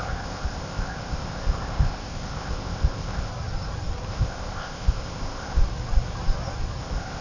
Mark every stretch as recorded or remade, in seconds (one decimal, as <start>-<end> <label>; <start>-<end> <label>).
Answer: 0.0-3.3 remade; 3.3-4.1 recorded; 4.1-5.6 remade; 5.6-6.8 recorded; 6.8-7.2 remade